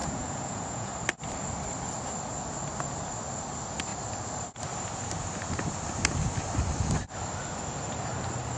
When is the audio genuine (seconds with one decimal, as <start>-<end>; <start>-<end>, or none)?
0.9-8.6